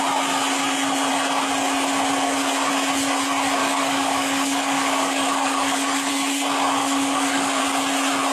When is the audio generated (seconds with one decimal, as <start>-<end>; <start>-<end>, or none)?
3.6-6.1; 6.8-7.6